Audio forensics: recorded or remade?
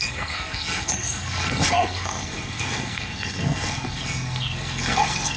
remade